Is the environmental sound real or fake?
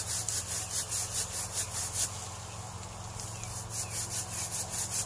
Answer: real